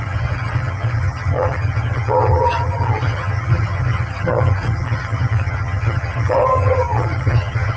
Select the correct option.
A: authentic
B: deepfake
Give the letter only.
B